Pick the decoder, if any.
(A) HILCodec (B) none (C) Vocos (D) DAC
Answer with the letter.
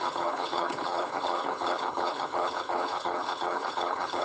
A